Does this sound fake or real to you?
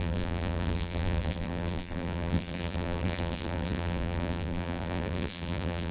fake